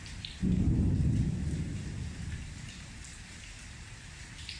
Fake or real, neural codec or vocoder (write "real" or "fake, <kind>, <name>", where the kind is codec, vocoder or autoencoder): real